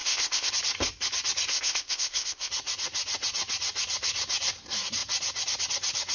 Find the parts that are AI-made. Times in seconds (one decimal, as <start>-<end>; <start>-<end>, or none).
0.0-0.5; 1.5-2.5